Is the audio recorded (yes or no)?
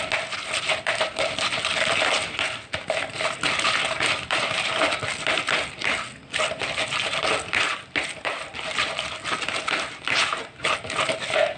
yes